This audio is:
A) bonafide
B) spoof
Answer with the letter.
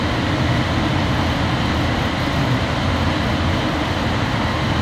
A